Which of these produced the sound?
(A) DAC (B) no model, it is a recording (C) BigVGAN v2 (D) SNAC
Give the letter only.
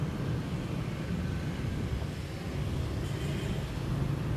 B